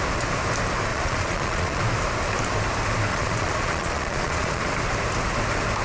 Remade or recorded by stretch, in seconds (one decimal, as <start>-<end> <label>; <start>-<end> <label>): 0.0-0.9 recorded; 0.9-1.8 remade; 1.8-3.1 recorded; 3.1-4.6 remade; 4.6-5.8 recorded